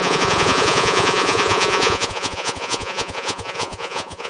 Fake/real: fake